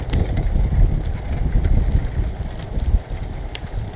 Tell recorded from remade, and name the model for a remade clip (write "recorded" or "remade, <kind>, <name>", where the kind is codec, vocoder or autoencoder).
recorded